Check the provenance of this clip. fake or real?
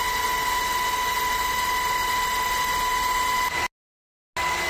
real